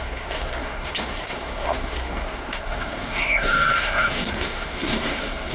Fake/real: fake